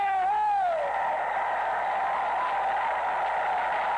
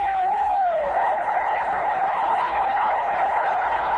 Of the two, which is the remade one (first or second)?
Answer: second